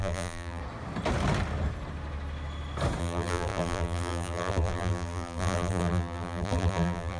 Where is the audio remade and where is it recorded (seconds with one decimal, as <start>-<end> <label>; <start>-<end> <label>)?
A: 0.0-0.6 remade; 0.6-3.0 recorded; 3.0-7.2 remade